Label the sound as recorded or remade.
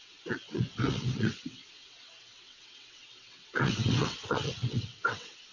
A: remade